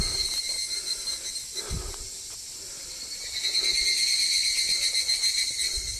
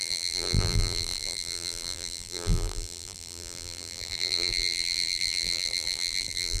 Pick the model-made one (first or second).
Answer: second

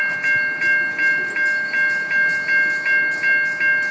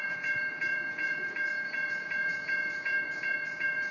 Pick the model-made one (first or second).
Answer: second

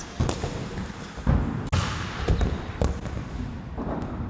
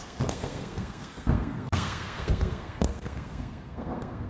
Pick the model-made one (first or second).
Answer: second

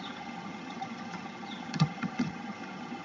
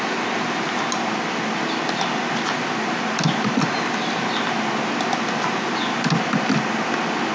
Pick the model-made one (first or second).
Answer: first